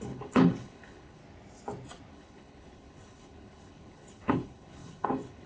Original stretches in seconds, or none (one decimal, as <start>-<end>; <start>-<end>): 1.2-2.1